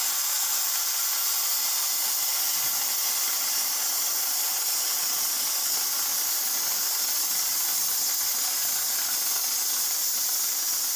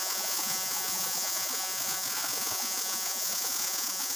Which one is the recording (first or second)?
first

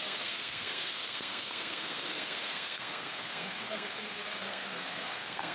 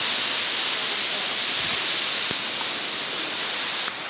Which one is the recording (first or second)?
second